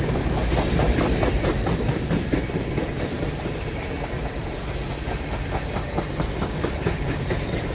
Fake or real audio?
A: real